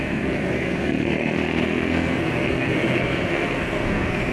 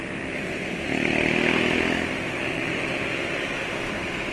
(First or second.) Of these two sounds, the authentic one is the second